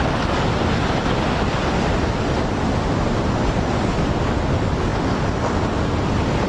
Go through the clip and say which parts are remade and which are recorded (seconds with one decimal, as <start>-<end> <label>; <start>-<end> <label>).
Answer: 0.0-6.5 recorded